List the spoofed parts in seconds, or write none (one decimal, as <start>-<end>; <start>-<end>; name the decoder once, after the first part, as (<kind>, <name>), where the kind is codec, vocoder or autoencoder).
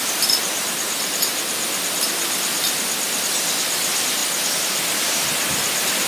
none